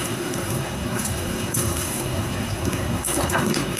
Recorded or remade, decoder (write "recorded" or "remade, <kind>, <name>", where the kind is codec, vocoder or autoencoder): remade, codec, SNAC